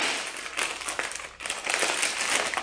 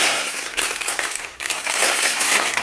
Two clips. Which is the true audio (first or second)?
first